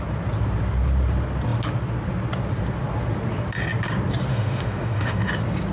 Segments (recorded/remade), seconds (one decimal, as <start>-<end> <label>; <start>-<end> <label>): 0.0-4.3 recorded; 4.3-5.3 remade; 5.3-5.7 recorded